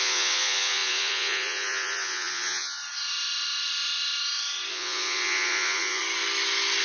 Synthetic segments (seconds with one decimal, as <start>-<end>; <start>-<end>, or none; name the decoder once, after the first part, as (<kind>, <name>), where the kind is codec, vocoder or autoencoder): 0.0-2.8 (vocoder, Vocos); 4.7-6.0